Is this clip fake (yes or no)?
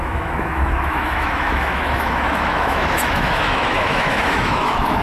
yes